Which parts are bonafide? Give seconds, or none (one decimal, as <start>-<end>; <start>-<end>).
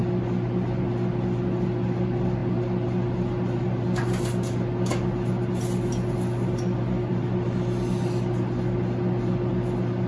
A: 0.0-10.1